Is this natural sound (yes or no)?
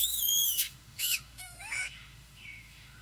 no